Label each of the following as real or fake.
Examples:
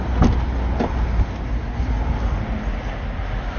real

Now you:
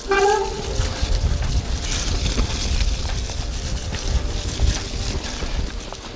real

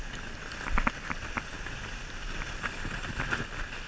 real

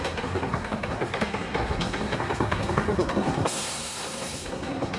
fake